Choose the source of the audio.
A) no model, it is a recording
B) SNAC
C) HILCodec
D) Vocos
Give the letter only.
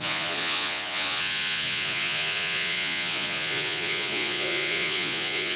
D